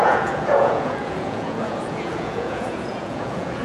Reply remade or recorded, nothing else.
remade